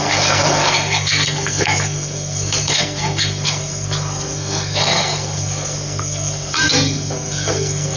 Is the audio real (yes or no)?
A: no